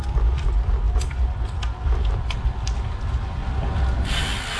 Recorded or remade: recorded